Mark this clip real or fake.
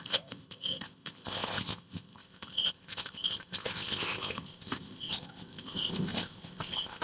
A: fake